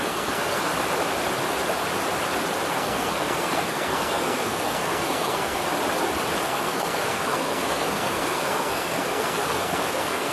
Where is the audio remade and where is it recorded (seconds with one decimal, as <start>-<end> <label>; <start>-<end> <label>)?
0.0-0.7 remade; 0.7-2.7 recorded; 2.7-5.6 remade; 5.6-6.4 recorded; 6.4-10.3 remade